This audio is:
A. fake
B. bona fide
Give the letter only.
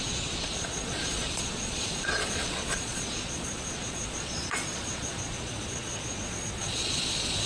A